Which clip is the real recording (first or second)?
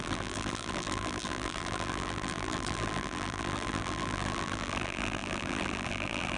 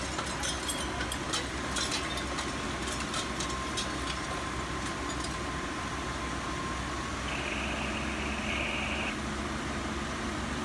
second